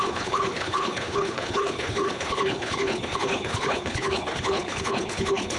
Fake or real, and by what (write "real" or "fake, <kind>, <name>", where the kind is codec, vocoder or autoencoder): fake, codec, HILCodec